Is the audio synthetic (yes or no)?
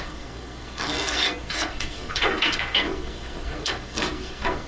yes